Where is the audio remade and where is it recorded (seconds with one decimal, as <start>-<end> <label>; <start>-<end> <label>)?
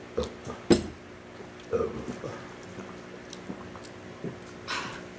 0.0-5.2 recorded